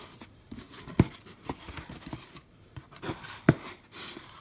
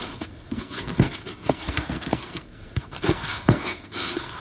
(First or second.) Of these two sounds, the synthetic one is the second